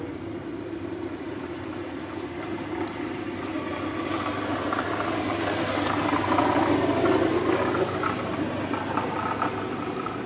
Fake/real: real